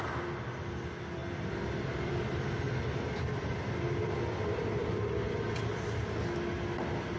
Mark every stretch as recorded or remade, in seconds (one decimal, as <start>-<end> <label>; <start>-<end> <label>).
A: 0.0-7.2 recorded